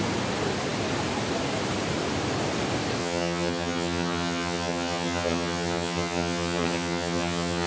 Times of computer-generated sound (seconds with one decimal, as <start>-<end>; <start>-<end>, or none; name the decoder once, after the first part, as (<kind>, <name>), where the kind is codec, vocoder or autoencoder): 3.0-7.7 (vocoder, HiFi-GAN)